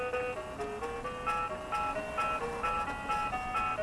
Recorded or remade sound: recorded